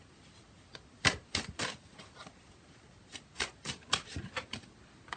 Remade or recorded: recorded